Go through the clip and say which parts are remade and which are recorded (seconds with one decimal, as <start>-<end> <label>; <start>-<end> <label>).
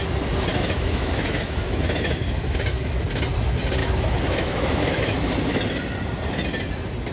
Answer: 0.0-0.5 recorded; 0.5-3.0 remade; 3.0-3.8 recorded; 3.8-5.3 remade; 5.3-7.1 recorded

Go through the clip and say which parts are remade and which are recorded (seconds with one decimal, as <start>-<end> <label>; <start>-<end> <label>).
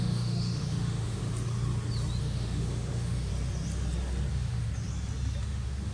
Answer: 0.0-1.2 remade; 1.2-2.2 recorded; 2.2-3.3 remade; 3.3-4.3 recorded; 4.3-4.7 remade; 4.7-5.4 recorded; 5.4-5.9 remade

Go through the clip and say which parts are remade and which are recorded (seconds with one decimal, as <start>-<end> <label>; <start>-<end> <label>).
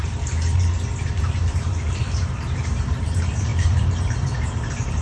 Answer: 0.0-5.0 remade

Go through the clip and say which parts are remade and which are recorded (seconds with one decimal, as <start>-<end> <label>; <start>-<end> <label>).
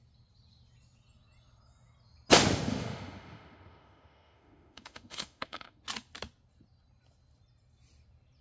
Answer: 0.0-2.7 recorded; 2.7-5.8 remade; 5.8-8.4 recorded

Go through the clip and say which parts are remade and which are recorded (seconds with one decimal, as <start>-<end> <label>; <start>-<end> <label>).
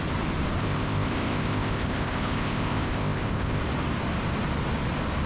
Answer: 0.0-0.6 recorded; 0.6-3.6 remade; 3.6-5.3 recorded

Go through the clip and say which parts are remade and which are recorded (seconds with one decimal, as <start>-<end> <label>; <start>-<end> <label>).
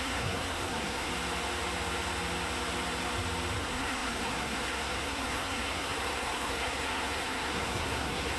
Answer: 0.0-1.1 remade; 1.1-3.6 recorded; 3.6-8.4 remade